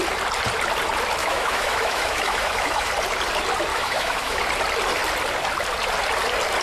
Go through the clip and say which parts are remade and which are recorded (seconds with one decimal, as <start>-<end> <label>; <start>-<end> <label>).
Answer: 0.0-1.2 recorded; 1.2-2.9 remade; 2.9-3.7 recorded; 3.7-4.4 remade; 4.4-6.6 recorded